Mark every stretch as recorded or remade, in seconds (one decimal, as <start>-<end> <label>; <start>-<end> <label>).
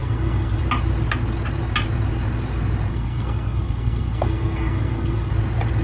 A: 0.0-0.6 remade; 0.6-2.9 recorded; 2.9-5.3 remade; 5.3-5.8 recorded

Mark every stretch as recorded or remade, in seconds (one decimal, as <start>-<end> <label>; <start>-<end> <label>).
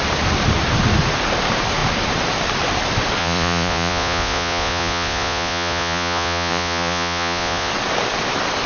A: 0.0-3.2 recorded; 3.2-7.7 remade; 7.7-8.7 recorded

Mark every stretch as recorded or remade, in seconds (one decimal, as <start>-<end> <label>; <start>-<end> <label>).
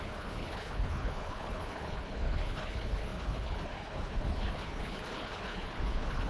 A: 0.0-6.3 remade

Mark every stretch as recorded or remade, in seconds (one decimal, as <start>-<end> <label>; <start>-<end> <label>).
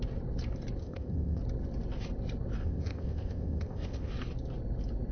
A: 0.0-0.8 recorded; 0.8-1.4 remade; 1.4-2.6 recorded; 2.6-4.1 remade; 4.1-5.1 recorded